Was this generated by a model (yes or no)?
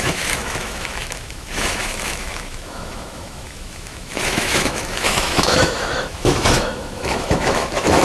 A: yes